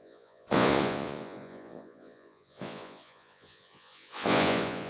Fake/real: fake